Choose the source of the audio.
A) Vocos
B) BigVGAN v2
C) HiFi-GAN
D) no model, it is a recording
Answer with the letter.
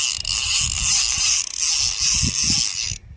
D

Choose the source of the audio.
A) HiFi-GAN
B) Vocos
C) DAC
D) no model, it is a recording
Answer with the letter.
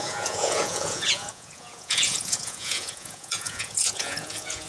B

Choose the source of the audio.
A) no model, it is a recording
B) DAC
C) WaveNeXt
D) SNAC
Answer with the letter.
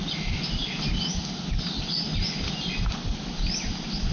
A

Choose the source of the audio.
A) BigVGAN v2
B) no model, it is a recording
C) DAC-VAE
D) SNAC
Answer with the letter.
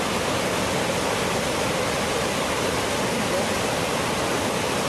B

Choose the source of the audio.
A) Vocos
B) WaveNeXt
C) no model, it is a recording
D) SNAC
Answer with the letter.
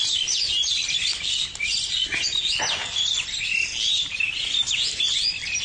C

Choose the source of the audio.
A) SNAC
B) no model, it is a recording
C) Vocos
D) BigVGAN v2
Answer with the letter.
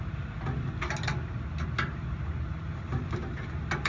B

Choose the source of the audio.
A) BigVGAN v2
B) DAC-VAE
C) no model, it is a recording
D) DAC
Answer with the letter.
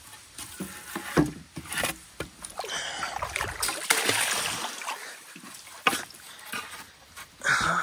C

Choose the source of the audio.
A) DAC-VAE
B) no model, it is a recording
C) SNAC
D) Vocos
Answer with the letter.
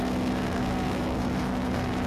C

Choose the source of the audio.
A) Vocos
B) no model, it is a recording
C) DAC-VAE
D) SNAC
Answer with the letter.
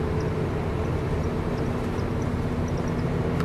B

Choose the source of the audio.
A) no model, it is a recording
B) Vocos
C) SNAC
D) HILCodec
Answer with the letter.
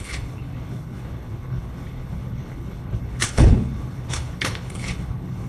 D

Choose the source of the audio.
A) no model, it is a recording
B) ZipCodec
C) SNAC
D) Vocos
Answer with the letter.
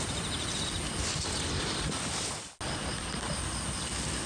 A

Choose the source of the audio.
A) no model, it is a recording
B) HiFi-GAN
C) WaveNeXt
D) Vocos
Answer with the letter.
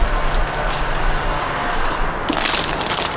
A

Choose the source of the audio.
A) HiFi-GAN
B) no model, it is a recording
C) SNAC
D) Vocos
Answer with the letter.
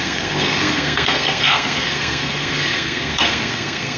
C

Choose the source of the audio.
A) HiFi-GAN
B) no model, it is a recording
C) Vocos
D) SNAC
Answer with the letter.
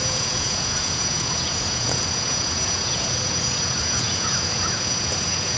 C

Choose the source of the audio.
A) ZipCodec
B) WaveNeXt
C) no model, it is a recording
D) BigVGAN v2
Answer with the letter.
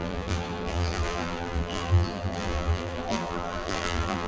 D